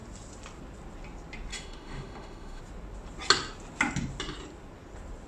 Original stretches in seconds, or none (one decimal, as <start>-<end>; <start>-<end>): 0.0-1.5; 2.6-5.3